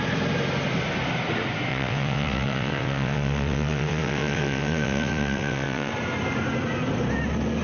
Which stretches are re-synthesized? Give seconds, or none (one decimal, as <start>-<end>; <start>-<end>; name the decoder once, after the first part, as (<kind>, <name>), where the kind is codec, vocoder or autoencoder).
1.7-5.9 (vocoder, WaveNeXt)